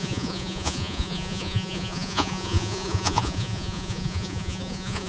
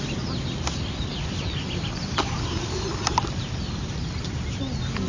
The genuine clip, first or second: second